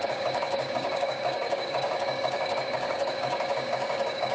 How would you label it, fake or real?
fake